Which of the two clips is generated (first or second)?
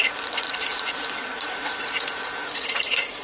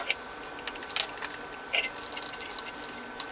first